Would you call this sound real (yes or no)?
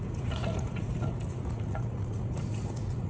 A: no